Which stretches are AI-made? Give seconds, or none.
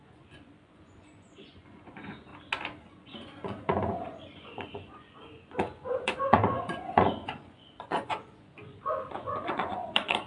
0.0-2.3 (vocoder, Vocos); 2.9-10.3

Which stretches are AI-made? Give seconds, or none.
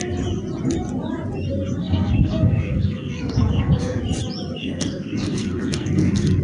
1.8-4.0 (codec, SNAC); 4.6-6.4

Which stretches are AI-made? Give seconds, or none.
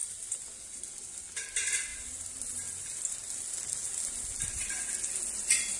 none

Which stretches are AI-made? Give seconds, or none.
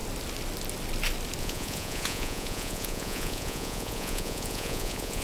1.4-5.2 (vocoder, Vocos)